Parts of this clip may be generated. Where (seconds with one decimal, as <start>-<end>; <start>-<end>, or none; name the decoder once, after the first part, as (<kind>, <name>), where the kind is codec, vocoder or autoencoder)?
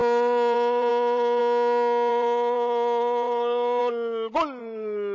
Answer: 0.0-1.4 (vocoder, BigVGAN v2); 2.1-3.8; 4.6-5.1